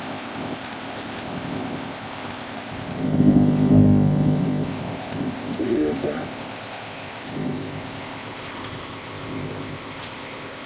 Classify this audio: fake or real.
fake